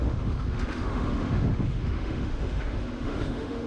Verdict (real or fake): fake